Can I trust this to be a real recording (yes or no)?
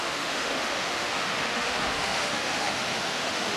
no